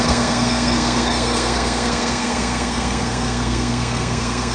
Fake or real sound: fake